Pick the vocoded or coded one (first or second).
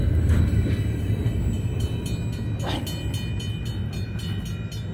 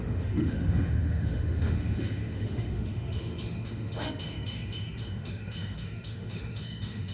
second